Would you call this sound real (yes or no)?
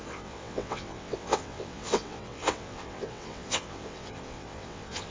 no